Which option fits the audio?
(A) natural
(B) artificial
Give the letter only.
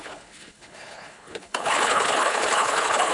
B